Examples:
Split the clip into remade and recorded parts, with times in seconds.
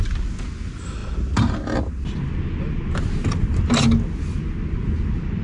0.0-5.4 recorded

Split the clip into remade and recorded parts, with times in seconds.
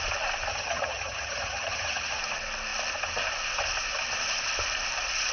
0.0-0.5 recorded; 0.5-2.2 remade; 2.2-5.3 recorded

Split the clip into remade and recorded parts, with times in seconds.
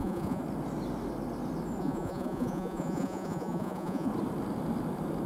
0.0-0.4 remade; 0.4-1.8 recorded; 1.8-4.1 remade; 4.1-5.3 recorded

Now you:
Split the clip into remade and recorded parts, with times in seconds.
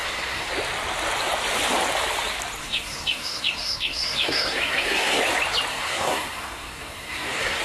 0.0-0.5 remade; 0.5-2.6 recorded; 2.6-5.2 remade; 5.2-5.7 recorded; 5.7-7.6 remade